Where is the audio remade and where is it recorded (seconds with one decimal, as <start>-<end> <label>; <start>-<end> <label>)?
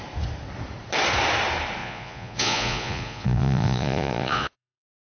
0.0-1.8 recorded; 1.8-5.1 remade